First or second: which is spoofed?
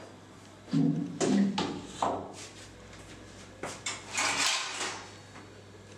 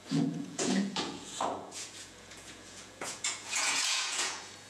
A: second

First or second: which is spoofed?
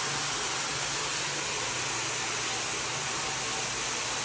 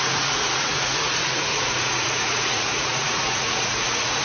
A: second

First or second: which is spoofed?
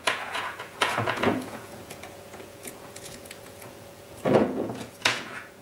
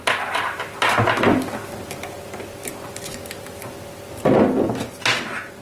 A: first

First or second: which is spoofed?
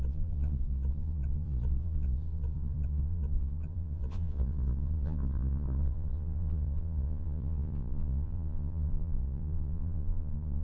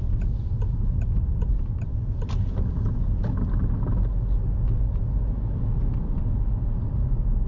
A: first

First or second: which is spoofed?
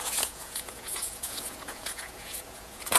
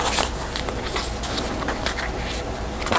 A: first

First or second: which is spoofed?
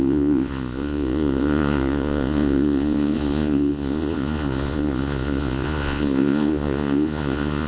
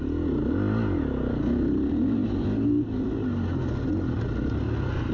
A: first